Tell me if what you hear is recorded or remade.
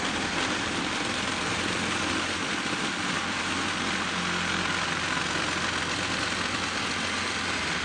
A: recorded